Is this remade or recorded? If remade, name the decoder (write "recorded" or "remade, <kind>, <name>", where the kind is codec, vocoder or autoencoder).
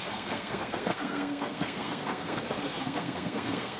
remade, codec, SNAC